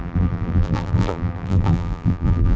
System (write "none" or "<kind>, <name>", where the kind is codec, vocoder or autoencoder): vocoder, BigVGAN v2